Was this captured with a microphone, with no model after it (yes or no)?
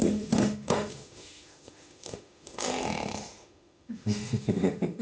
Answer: no